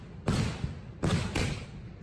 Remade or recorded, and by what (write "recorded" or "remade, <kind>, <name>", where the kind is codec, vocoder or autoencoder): recorded